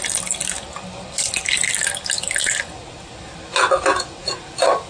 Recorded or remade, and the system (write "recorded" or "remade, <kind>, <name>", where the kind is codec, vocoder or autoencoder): recorded